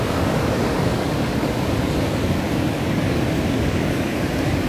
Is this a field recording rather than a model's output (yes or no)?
no